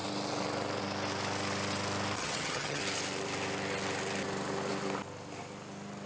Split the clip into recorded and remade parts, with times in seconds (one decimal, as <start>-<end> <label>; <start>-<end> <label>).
0.0-2.2 recorded; 2.2-2.8 remade; 2.8-6.1 recorded